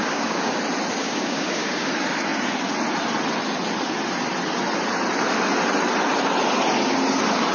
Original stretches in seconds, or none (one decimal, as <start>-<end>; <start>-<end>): 0.6-1.0; 1.9-7.5